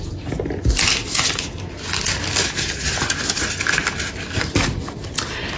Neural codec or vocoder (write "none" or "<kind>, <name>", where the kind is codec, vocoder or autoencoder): none